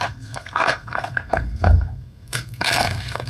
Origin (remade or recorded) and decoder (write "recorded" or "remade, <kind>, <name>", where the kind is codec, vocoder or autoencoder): remade, codec, SNAC